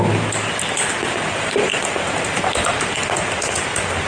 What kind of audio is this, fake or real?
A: real